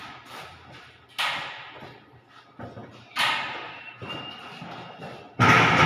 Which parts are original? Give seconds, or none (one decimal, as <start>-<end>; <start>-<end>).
0.0-5.9